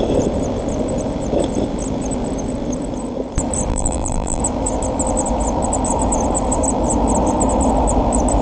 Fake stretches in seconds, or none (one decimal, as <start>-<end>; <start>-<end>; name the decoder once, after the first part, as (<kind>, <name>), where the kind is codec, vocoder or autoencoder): 3.7-4.4 (vocoder, BigVGAN v2)